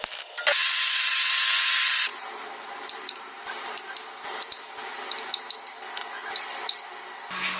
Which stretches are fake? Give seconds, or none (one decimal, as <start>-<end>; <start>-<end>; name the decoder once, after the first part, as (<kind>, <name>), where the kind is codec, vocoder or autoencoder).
0.6-1.5 (vocoder, BigVGAN v2); 2.1-5.3